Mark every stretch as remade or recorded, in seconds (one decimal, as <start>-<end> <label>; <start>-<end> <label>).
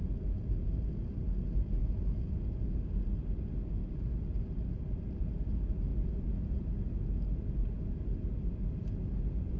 0.0-1.8 recorded; 1.8-2.8 remade; 2.8-5.9 recorded; 5.9-6.7 remade; 6.7-9.6 recorded